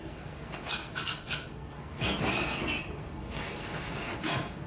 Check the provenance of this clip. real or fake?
fake